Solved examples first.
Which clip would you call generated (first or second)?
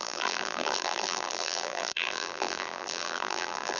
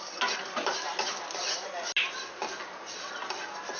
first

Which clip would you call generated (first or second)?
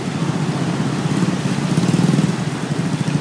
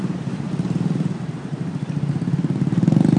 second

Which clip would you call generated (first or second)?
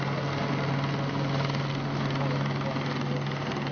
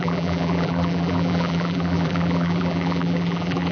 second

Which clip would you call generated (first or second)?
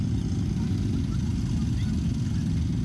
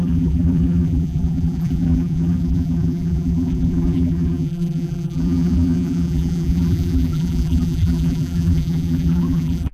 second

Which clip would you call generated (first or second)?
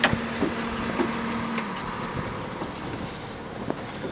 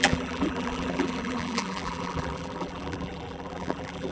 second